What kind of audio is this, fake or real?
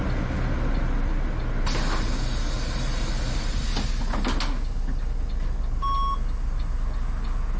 real